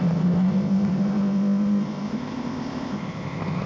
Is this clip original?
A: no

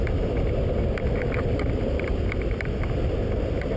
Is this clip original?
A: yes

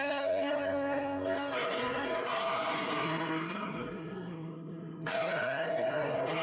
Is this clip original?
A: no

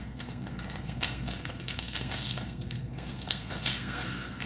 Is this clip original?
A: no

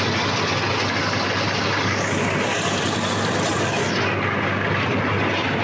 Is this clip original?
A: yes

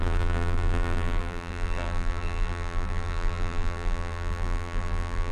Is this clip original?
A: no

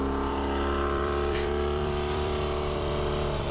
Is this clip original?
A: no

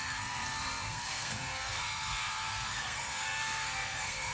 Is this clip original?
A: no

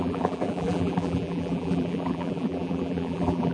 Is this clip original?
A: no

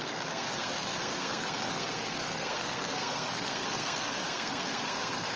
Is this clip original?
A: no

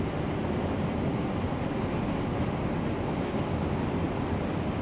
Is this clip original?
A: yes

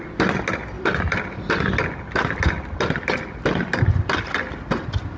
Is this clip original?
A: yes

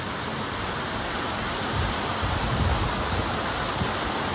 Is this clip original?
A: yes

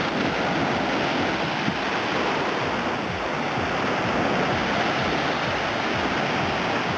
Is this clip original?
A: yes